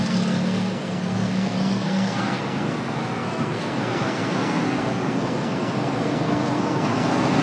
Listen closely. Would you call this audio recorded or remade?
remade